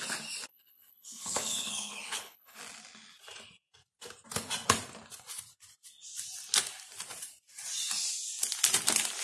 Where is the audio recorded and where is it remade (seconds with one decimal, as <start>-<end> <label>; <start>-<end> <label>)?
0.0-0.5 recorded; 0.5-2.6 remade; 2.6-9.2 recorded